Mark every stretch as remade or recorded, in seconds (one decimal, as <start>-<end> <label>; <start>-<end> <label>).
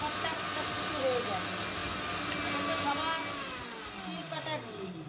0.0-5.1 recorded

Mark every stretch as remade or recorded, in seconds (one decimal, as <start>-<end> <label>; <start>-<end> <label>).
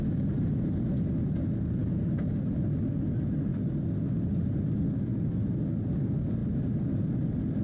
0.0-7.6 recorded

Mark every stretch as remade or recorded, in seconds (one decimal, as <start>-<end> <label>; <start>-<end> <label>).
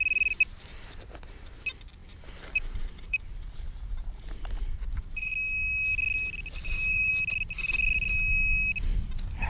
0.0-2.0 recorded; 2.0-5.3 remade; 5.3-6.6 recorded; 6.6-7.1 remade; 7.1-9.5 recorded